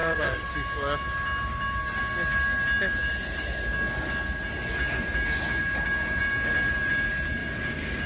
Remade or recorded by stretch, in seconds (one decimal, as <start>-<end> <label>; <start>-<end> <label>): 0.0-0.5 remade; 0.5-8.1 recorded